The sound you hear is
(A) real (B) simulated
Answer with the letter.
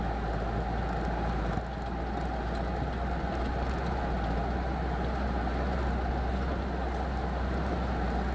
A